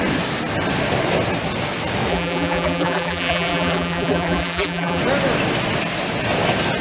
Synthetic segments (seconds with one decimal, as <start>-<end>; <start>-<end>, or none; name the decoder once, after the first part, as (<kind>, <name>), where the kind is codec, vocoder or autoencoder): 2.1-5.0 (vocoder, BigVGAN v2)